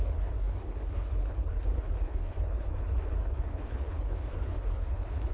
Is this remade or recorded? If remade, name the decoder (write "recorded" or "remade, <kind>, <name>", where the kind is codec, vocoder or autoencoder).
remade, codec, HILCodec